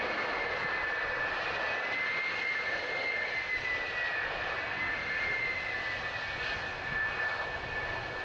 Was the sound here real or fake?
real